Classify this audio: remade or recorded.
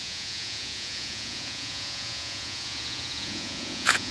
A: remade